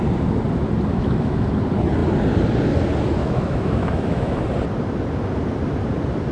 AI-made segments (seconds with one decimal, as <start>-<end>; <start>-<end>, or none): 0.9-1.5; 3.2-4.4